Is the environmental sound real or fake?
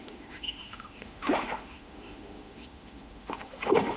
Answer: fake